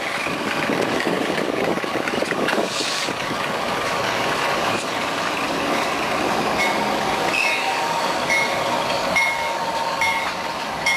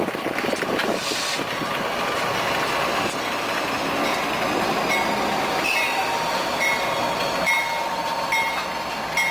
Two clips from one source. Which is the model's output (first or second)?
first